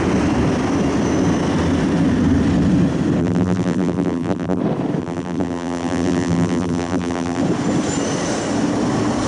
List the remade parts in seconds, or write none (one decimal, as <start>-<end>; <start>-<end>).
3.2-4.6; 5.0-7.4